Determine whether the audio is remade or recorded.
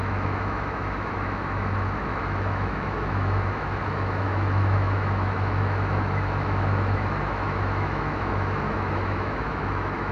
remade